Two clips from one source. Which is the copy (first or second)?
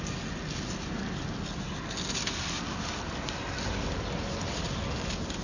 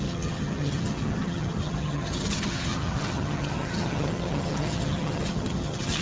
second